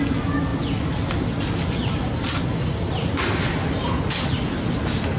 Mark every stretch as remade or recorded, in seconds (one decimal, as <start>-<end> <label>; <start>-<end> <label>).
0.0-5.2 recorded